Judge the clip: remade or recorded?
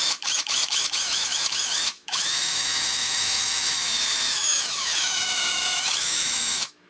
remade